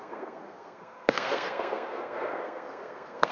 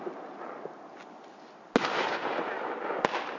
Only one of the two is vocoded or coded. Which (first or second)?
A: first